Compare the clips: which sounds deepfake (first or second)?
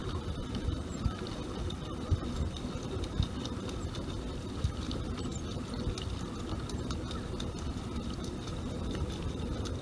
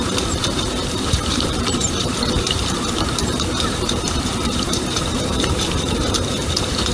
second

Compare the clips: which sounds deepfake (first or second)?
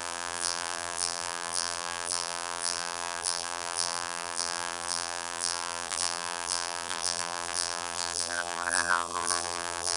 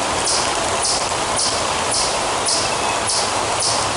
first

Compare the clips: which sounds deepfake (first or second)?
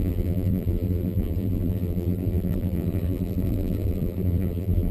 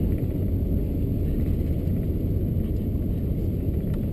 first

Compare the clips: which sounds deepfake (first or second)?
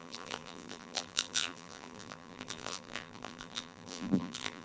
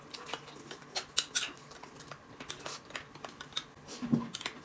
first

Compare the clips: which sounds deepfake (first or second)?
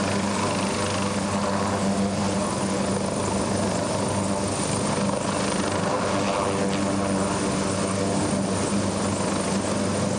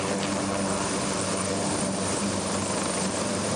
second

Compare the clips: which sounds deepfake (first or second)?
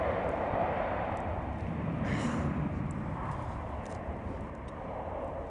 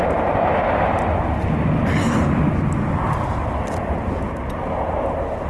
first